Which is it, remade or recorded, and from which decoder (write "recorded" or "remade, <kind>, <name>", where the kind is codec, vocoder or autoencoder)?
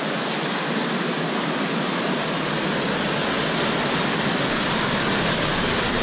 recorded